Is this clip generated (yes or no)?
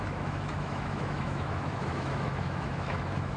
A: yes